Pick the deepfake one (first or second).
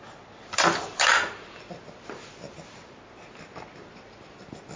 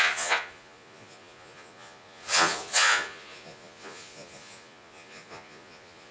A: second